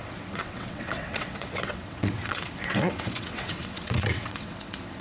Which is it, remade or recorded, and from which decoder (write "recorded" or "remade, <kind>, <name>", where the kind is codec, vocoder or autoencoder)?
remade, vocoder, WaveNeXt